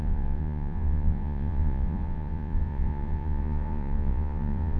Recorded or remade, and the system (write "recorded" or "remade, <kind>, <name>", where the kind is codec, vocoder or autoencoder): remade, vocoder, Vocos